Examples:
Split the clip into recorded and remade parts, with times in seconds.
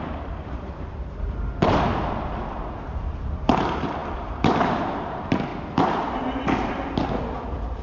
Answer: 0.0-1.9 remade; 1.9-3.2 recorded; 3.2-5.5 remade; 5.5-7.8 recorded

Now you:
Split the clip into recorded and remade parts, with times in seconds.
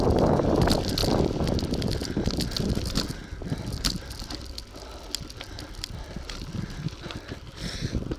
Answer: 0.0-8.2 recorded